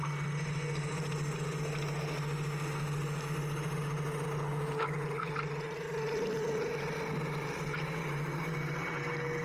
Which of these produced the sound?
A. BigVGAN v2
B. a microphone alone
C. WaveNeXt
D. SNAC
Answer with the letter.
B